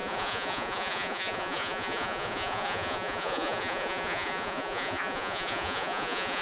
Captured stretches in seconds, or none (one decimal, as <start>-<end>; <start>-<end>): none